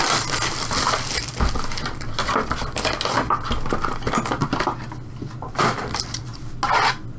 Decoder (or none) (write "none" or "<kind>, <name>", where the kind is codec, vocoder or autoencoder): none